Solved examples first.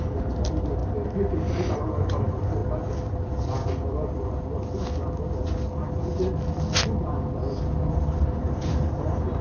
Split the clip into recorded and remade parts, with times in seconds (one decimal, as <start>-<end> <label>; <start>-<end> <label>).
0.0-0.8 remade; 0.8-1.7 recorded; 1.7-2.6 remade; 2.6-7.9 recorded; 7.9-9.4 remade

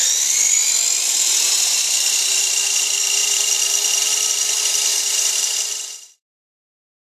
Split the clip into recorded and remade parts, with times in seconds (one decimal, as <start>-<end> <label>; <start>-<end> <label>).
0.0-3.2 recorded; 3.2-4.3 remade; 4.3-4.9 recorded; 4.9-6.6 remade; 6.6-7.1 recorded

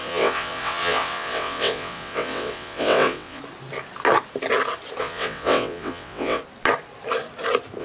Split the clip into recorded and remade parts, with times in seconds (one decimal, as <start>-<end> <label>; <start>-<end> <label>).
0.0-3.4 remade; 3.4-5.0 recorded; 5.0-6.4 remade; 6.4-7.8 recorded

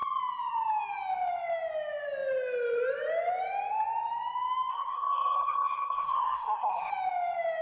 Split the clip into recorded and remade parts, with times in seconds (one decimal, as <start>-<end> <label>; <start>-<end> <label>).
0.0-4.7 recorded; 4.7-6.9 remade; 6.9-7.6 recorded

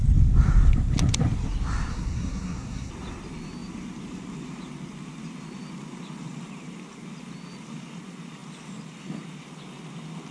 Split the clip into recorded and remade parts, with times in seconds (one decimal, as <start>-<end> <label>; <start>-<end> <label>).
0.0-1.9 recorded; 1.9-2.9 remade; 2.9-10.3 recorded

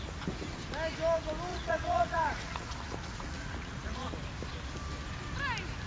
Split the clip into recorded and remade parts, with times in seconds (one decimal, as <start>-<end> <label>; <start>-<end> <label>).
0.0-1.5 recorded; 1.5-4.1 remade; 4.1-5.9 recorded

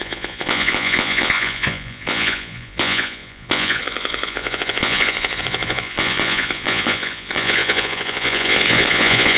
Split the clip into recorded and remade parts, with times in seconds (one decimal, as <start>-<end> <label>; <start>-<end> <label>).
0.0-9.4 remade

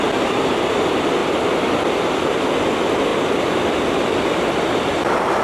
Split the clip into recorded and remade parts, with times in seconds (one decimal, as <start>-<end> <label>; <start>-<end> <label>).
0.0-3.1 recorded; 3.1-5.4 remade